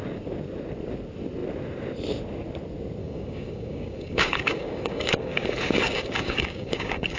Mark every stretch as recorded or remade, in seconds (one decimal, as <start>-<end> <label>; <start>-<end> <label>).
0.0-3.0 recorded; 3.0-7.2 remade